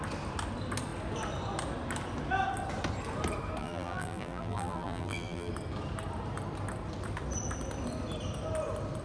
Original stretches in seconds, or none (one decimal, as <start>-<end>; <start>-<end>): 0.0-3.6; 5.5-9.0